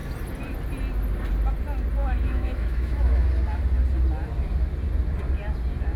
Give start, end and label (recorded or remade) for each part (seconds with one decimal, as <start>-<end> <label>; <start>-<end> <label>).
0.0-2.0 recorded; 2.0-3.3 remade; 3.3-6.0 recorded